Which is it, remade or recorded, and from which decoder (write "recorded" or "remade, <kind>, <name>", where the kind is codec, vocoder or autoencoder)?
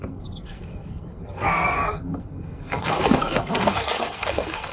remade, codec, SNAC